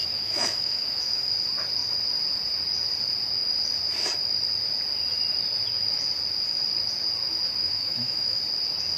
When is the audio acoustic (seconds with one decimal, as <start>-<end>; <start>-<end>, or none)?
1.3-7.6; 8.4-9.0